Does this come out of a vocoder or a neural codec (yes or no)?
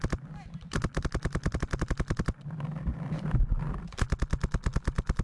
no